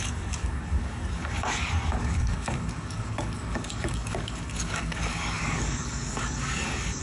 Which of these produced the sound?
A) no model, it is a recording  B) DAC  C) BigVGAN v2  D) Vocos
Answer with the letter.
B